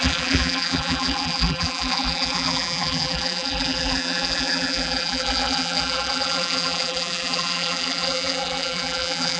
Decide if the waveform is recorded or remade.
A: remade